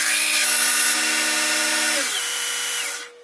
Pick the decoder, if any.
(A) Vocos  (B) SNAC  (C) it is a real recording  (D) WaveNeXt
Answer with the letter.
C